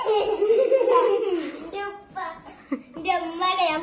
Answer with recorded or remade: recorded